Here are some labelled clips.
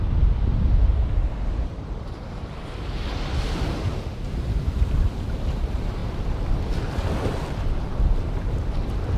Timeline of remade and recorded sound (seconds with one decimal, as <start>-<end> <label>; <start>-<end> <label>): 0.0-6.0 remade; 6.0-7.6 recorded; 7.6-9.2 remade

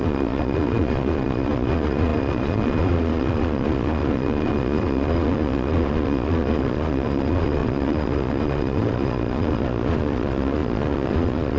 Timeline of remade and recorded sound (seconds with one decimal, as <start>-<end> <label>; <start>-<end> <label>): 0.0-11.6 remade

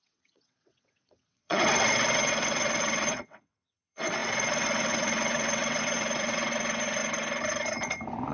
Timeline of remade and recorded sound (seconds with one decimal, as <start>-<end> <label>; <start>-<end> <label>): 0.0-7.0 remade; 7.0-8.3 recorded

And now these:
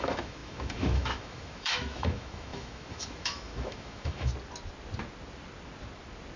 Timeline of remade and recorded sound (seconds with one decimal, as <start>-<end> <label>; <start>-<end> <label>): 0.0-4.3 remade; 4.3-6.4 recorded